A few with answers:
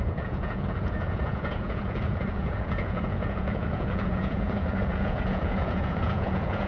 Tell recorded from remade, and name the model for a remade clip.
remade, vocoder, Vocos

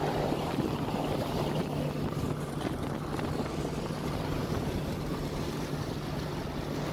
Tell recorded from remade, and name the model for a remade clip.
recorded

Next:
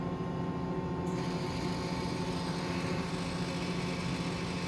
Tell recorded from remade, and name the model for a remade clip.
recorded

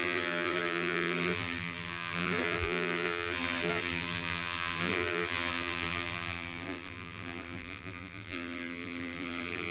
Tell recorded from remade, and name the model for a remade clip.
remade, vocoder, BigVGAN v2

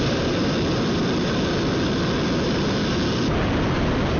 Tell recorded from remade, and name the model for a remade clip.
recorded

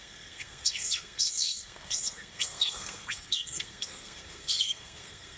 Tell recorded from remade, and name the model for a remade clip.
remade, codec, SNAC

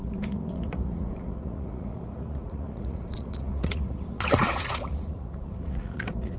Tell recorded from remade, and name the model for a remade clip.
remade, vocoder, Vocos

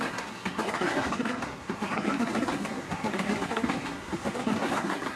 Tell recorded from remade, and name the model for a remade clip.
remade, codec, SNAC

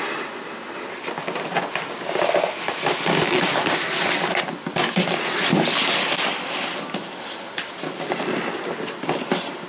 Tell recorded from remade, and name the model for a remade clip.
recorded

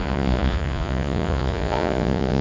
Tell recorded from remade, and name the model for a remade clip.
remade, vocoder, Vocos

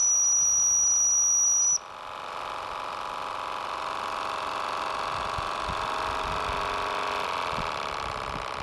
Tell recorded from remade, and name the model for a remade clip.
recorded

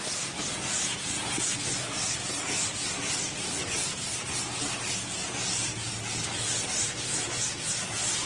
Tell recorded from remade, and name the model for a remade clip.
recorded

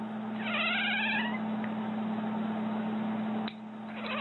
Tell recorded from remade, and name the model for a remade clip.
recorded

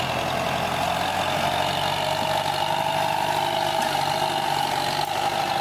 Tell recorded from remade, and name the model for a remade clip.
recorded